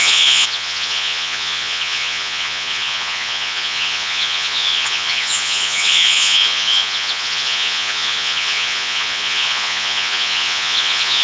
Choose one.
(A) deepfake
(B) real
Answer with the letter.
A